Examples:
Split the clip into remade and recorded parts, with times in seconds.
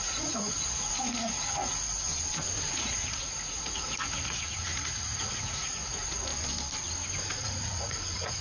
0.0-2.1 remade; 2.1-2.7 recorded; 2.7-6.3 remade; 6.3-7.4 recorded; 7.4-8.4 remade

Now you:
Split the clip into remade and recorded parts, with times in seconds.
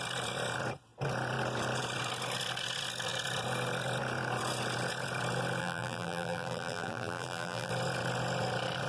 0.0-5.6 recorded; 5.6-7.7 remade; 7.7-8.9 recorded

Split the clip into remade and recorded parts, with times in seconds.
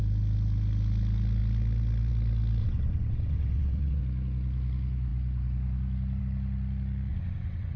0.0-2.6 recorded; 2.6-4.0 remade; 4.0-7.1 recorded; 7.1-7.8 remade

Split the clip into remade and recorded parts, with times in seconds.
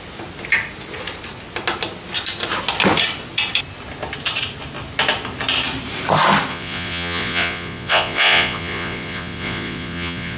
0.0-6.5 recorded; 6.5-10.4 remade